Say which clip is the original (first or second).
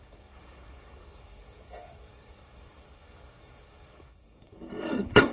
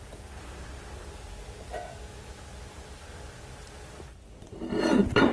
second